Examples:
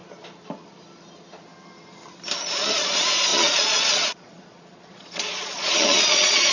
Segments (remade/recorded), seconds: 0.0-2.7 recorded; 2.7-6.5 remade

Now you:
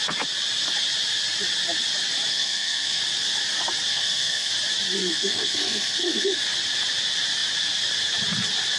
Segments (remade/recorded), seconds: 0.0-2.3 recorded; 2.3-3.0 remade; 3.0-3.9 recorded; 3.9-4.5 remade; 4.5-5.0 recorded; 5.0-6.4 remade; 6.4-8.8 recorded

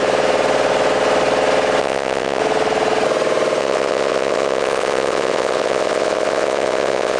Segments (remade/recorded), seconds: 0.0-1.8 recorded; 1.8-2.4 remade; 2.4-3.6 recorded; 3.6-7.2 remade

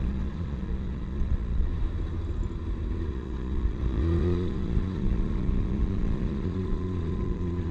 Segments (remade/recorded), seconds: 0.0-1.7 remade; 1.7-3.1 recorded; 3.1-7.7 remade

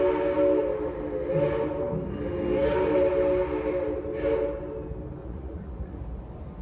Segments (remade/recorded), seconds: 0.0-5.2 recorded; 5.2-6.0 remade; 6.0-6.6 recorded